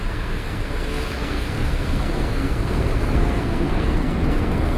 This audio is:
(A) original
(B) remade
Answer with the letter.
B